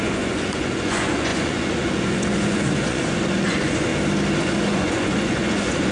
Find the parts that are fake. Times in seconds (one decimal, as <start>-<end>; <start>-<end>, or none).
0.0-3.9; 4.4-5.9

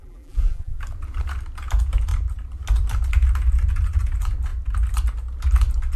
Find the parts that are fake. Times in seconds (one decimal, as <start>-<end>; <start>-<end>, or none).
0.0-0.8

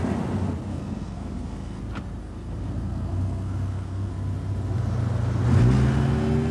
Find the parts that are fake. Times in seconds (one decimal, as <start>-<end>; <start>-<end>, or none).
0.7-1.8; 2.2-4.1

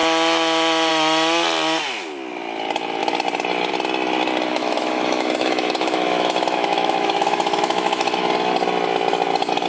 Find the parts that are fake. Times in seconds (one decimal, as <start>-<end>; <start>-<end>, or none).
4.5-8.2

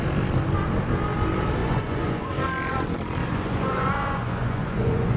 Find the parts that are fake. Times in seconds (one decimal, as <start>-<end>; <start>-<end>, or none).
1.6-2.3; 3.2-5.2

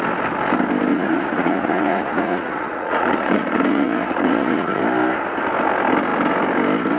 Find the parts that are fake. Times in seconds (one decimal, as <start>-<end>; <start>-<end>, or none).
0.9-4.8